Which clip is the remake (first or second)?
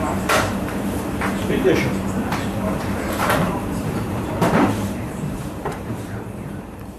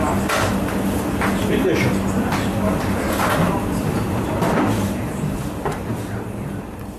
first